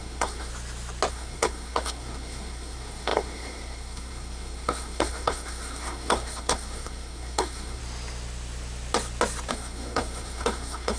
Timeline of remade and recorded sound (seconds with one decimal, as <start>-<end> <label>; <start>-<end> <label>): 0.0-0.5 remade; 0.5-1.1 recorded; 1.1-7.8 remade; 7.8-9.5 recorded; 9.5-11.0 remade